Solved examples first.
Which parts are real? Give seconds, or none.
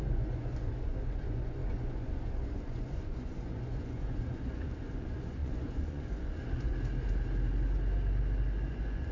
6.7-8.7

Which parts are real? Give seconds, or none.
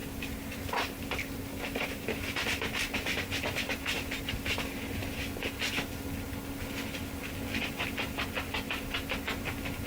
1.6-9.9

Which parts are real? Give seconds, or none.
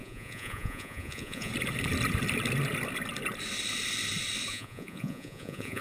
1.5-4.5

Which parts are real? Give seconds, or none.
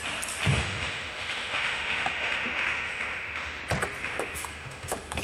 0.0-0.5; 3.6-4.0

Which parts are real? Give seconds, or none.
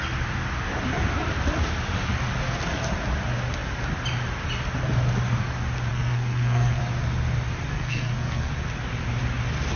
0.0-5.9; 6.8-7.7; 8.5-9.8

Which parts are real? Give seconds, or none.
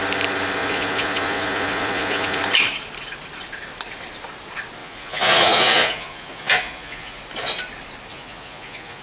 0.0-0.6; 2.4-4.8; 7.2-8.1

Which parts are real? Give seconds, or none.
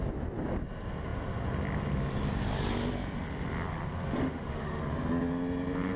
0.0-4.2; 4.8-6.0